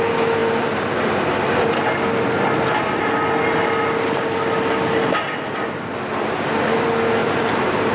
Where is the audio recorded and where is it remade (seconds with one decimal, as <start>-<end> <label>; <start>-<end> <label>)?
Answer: 0.0-7.2 recorded; 7.2-7.9 remade